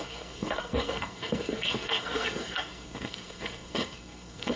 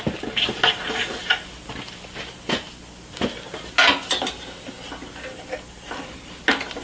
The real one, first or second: second